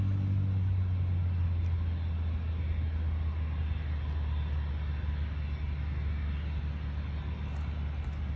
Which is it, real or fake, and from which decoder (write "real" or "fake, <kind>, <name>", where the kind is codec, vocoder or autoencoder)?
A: real